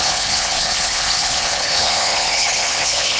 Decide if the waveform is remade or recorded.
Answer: remade